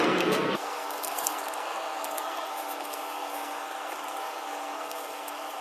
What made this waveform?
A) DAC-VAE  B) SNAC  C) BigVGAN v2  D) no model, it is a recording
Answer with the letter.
B